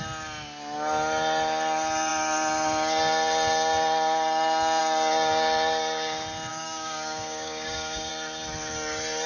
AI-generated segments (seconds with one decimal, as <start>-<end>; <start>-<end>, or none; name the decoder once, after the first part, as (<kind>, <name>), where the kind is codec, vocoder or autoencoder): 6.5-8.1 (codec, DAC)